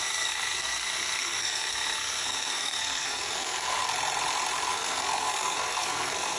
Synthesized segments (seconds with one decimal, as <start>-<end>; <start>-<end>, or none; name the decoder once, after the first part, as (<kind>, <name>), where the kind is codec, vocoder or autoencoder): 0.0-3.8 (codec, SNAC); 4.7-6.4